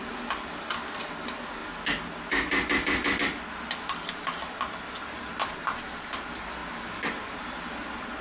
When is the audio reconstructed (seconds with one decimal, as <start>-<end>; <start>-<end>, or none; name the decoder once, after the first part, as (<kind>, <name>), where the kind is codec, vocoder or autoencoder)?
none